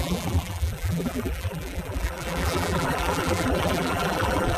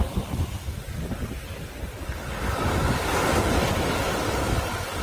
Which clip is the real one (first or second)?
second